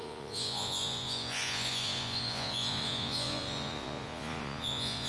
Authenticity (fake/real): fake